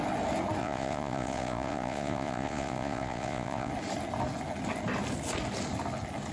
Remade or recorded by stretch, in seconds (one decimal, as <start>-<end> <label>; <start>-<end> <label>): 0.0-0.6 recorded; 0.6-3.7 remade; 3.7-6.3 recorded